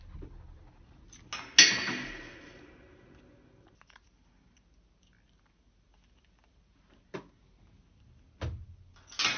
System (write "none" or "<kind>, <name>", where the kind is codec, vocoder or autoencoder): none